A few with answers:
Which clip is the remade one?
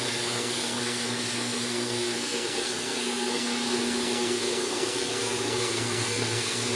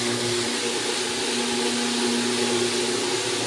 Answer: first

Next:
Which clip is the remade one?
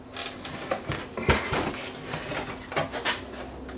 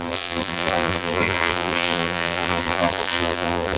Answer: second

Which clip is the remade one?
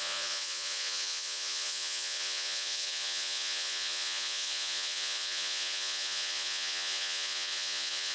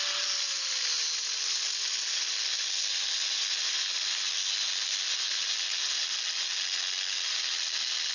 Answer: first